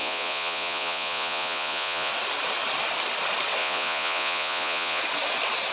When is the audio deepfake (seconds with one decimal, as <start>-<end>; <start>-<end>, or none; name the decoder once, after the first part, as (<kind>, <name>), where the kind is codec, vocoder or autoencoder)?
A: 0.0-2.1 (vocoder, Vocos); 3.6-5.0